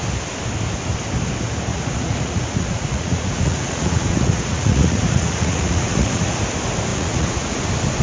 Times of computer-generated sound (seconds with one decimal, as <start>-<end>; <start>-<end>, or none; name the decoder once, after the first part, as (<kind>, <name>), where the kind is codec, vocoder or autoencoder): 1.7-6.4 (vocoder, Vocos); 6.9-7.6